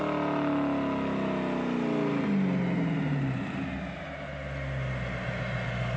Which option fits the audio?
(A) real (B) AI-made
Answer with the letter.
A